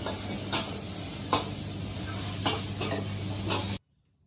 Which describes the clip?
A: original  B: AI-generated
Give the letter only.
A